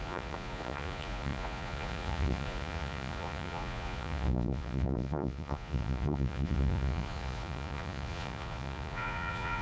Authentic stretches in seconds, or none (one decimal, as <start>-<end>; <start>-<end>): none